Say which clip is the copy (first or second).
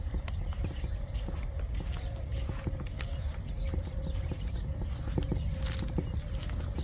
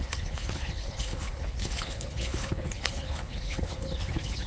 second